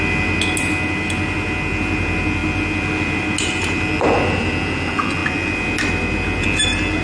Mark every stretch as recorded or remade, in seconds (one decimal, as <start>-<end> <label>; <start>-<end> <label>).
0.0-7.0 recorded